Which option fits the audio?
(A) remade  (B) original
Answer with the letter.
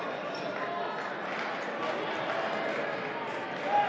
B